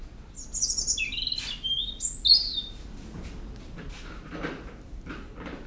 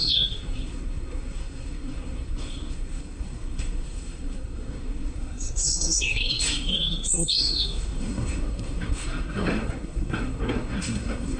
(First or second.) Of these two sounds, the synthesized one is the second